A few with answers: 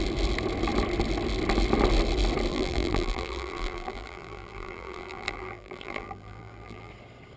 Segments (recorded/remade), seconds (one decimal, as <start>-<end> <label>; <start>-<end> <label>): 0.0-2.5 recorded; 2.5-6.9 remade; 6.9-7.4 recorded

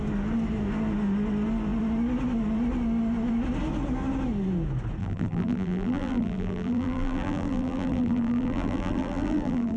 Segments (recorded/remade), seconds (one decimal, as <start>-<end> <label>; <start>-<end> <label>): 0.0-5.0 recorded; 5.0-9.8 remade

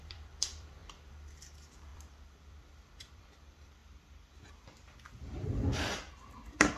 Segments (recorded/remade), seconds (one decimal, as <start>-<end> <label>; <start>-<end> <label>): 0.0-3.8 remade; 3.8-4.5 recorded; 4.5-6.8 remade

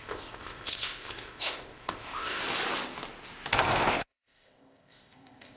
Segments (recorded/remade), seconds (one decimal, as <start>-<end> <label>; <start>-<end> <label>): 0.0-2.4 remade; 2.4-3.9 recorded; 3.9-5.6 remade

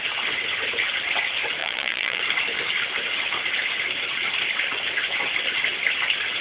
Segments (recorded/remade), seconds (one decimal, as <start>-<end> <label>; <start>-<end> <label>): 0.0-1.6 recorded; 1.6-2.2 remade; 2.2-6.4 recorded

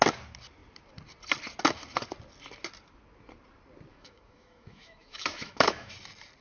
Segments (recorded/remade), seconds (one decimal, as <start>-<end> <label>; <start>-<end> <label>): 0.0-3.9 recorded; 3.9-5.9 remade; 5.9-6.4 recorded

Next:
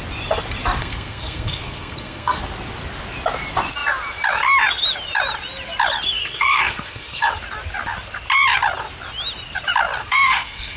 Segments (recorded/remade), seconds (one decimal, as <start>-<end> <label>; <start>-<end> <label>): 0.0-0.8 recorded; 0.8-2.4 remade; 2.4-6.2 recorded; 6.2-7.3 remade; 7.3-10.0 recorded; 10.0-10.8 remade